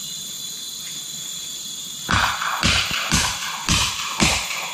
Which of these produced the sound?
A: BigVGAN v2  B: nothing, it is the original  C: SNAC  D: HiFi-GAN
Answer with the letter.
A